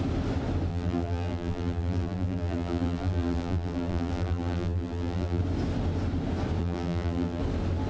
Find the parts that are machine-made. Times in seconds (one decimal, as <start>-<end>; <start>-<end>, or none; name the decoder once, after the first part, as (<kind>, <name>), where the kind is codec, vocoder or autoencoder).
0.7-5.4 (vocoder, BigVGAN v2); 6.6-7.4